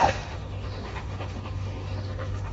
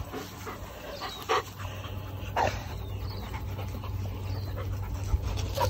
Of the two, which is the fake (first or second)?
first